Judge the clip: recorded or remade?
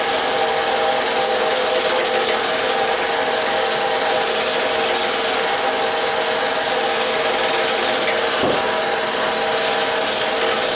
recorded